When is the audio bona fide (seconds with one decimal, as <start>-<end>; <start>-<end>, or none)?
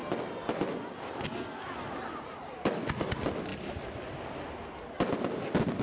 0.0-5.8